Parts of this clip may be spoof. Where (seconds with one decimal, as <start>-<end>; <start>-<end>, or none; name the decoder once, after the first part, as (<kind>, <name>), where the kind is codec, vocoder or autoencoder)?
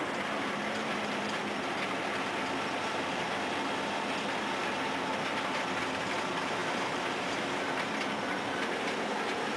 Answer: 0.0-1.4 (vocoder, BigVGAN v2); 5.3-9.6